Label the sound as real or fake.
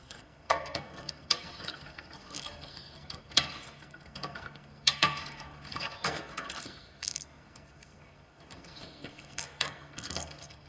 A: fake